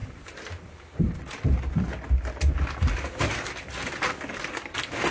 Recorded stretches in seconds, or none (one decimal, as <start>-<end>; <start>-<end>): 0.0-5.1